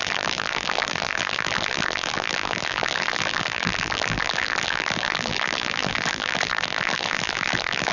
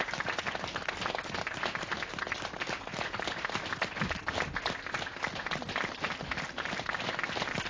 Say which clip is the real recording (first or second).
second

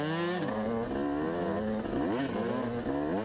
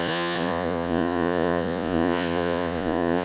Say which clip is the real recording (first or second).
first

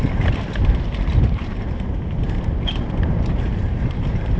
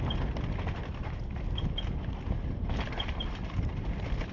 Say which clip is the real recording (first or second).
second